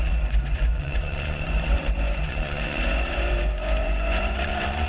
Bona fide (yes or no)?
no